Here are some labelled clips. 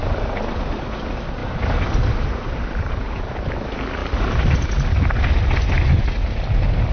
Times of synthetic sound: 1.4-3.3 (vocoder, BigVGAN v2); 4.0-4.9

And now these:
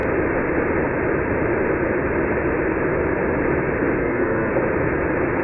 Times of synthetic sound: 4.0-4.5 (codec, SNAC)

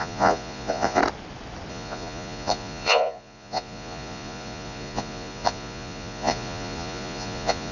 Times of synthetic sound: 0.0-1.0 (vocoder, Vocos); 1.7-7.7

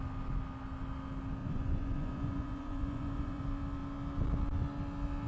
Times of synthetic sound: 1.4-3.4 (vocoder, Vocos)

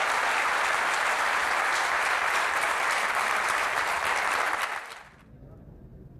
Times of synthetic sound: none

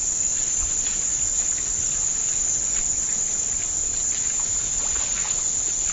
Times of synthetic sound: none

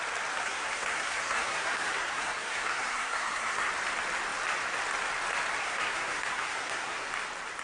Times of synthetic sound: 0.4-3.7 (codec, SNAC); 5.6-7.1